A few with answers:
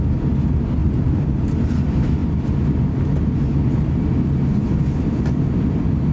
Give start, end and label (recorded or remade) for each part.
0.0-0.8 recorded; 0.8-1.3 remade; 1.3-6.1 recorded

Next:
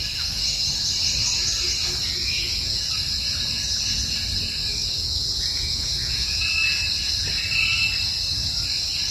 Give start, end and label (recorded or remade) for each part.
0.0-2.2 recorded; 2.2-2.9 remade; 2.9-4.8 recorded; 4.8-6.5 remade; 6.5-9.1 recorded

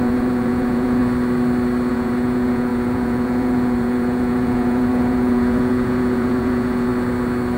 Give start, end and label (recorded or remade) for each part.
0.0-1.0 remade; 1.0-1.9 recorded; 1.9-6.9 remade; 6.9-7.6 recorded

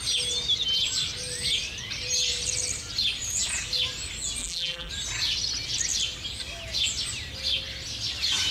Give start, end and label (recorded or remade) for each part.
0.0-4.4 recorded; 4.4-4.9 remade; 4.9-8.5 recorded

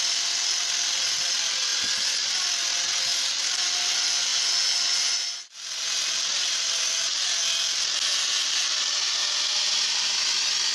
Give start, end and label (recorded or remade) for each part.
0.0-10.7 recorded

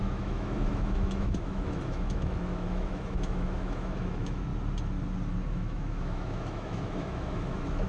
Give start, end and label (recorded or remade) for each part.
0.0-4.5 remade; 4.5-5.5 recorded; 5.5-7.9 remade